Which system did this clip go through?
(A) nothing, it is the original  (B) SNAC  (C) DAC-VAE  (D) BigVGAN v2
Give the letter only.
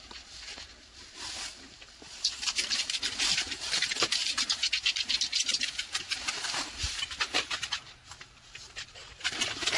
D